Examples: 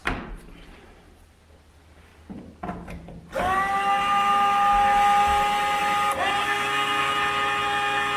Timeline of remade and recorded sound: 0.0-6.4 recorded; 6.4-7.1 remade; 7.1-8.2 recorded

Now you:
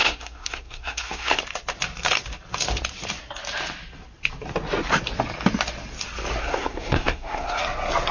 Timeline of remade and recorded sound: 0.0-1.4 remade; 1.4-6.4 recorded; 6.4-7.6 remade; 7.6-8.1 recorded

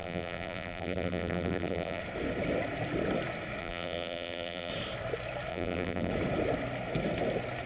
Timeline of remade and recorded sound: 0.0-2.0 remade; 2.0-3.6 recorded; 3.6-4.7 remade; 4.7-5.5 recorded; 5.5-6.1 remade; 6.1-7.7 recorded

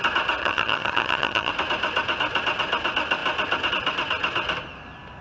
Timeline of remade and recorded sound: 0.0-0.4 recorded; 0.4-1.5 remade; 1.5-5.2 recorded

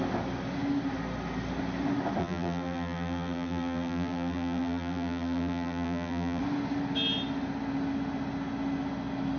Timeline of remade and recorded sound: 0.0-2.2 recorded; 2.2-6.4 remade; 6.4-9.4 recorded

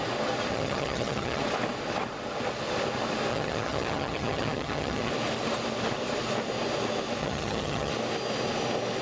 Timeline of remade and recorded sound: 0.0-0.5 recorded; 0.5-1.4 remade; 1.4-3.3 recorded; 3.3-5.1 remade; 5.1-7.2 recorded; 7.2-7.9 remade; 7.9-9.0 recorded